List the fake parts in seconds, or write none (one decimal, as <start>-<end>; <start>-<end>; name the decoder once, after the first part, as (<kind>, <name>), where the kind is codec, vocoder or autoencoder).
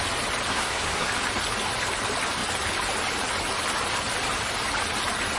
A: 0.5-1.1 (codec, SNAC)